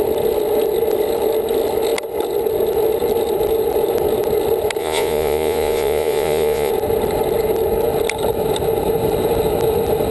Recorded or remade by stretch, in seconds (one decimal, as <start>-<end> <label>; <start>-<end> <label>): 0.0-4.8 recorded; 4.8-6.7 remade; 6.7-10.1 recorded